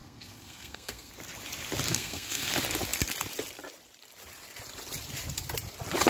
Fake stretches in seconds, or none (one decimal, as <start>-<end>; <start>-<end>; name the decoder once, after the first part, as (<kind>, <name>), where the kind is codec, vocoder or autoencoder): 0.0-1.1 (codec, SNAC); 1.9-2.5